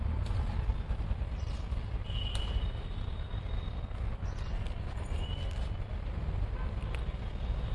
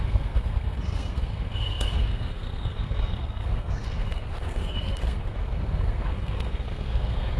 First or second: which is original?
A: first